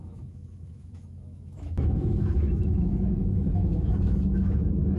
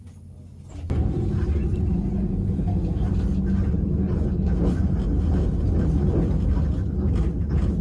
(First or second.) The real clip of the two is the second